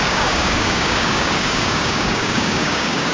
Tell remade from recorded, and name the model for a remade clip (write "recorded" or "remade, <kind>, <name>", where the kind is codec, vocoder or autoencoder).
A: remade, codec, DAC